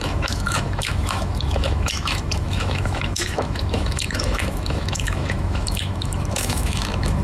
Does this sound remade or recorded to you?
remade